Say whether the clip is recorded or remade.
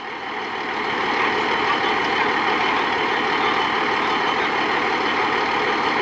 recorded